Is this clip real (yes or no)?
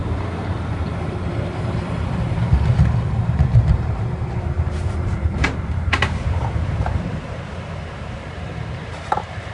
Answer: no